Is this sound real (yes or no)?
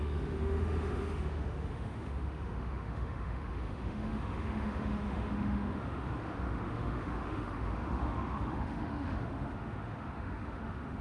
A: no